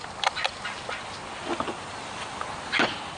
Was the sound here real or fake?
real